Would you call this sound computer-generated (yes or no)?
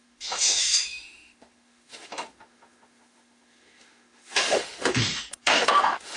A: yes